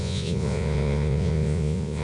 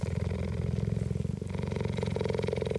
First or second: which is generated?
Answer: first